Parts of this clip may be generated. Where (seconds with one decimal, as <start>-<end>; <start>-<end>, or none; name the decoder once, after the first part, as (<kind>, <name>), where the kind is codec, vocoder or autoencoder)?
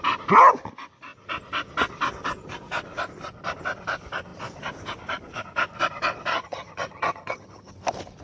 6.3-7.7 (vocoder, HiFi-GAN)